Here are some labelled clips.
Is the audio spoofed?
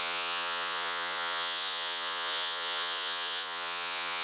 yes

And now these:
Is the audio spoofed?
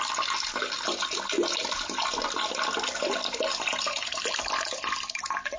no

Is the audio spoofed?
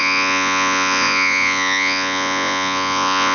yes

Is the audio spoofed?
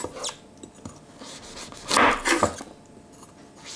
no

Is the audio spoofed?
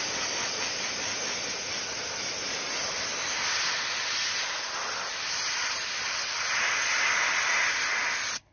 no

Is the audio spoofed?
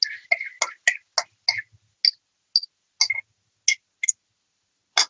no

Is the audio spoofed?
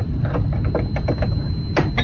no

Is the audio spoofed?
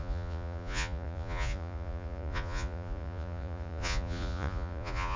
yes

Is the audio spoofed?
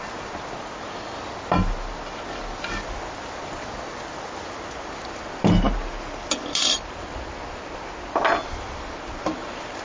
no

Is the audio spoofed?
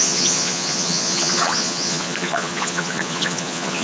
yes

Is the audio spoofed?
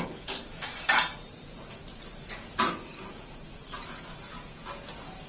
yes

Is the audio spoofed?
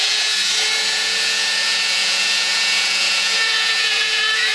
yes